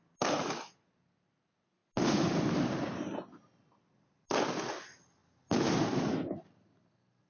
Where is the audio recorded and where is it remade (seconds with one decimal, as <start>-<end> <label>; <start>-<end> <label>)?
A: 0.0-7.3 recorded